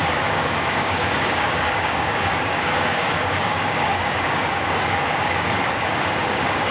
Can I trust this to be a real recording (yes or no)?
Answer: no